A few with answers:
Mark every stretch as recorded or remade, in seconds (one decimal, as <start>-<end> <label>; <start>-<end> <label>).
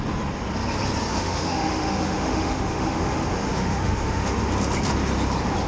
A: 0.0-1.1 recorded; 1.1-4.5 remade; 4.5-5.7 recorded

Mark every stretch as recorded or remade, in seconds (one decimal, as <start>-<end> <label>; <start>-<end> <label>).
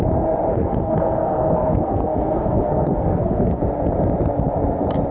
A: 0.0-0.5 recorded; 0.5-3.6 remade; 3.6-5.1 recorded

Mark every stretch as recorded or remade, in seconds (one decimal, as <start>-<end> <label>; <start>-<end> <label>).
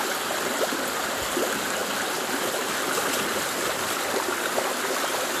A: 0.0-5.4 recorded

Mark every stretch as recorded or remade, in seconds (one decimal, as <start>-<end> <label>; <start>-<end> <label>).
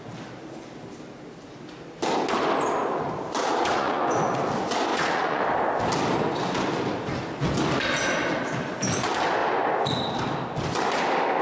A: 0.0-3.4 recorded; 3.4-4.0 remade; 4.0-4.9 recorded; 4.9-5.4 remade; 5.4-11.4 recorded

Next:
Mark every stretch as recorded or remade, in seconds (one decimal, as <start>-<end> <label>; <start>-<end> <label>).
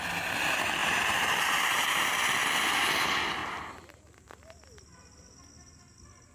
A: 0.0-0.8 recorded; 0.8-2.0 remade; 2.0-3.4 recorded; 3.4-4.3 remade; 4.3-6.3 recorded